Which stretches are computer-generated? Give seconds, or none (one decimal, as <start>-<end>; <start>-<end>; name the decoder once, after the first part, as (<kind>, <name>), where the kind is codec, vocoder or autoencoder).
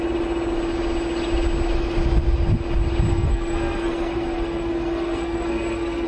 3.1-6.1 (codec, SNAC)